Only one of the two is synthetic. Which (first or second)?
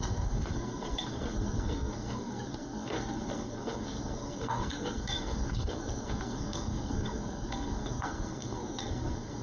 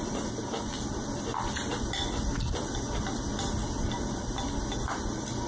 first